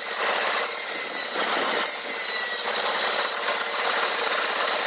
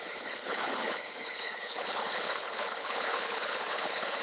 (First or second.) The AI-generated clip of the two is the second